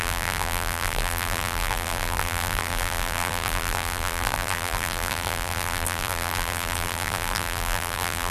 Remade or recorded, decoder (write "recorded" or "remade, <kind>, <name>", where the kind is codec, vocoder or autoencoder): remade, vocoder, BigVGAN v2